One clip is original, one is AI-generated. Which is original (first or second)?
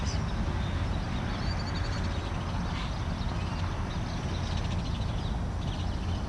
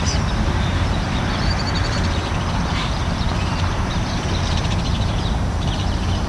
first